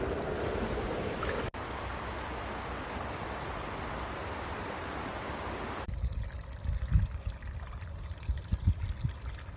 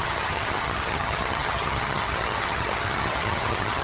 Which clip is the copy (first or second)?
second